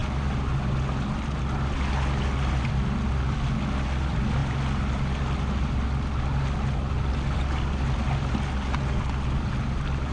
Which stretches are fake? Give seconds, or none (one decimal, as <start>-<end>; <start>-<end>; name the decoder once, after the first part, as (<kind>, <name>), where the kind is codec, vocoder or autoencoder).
none